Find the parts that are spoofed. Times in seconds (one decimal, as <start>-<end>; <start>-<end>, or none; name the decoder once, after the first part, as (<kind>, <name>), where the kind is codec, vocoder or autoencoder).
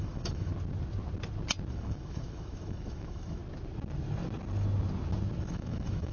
0.0-0.5 (autoencoder, DAC-VAE); 1.7-3.4; 5.4-6.1